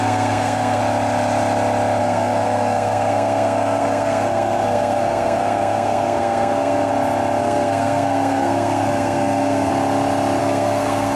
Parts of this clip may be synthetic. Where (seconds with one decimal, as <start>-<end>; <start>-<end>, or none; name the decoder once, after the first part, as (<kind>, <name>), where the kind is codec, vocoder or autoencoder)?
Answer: 0.0-0.8 (codec, SNAC); 2.0-6.9; 7.4-9.7; 10.4-11.2